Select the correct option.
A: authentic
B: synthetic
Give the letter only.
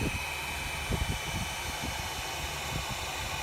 A